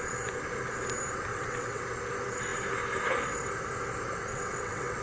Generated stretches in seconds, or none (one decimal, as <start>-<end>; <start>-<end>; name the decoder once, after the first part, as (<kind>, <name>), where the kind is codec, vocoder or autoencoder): 1.3-1.8 (vocoder, WaveNeXt); 4.3-5.0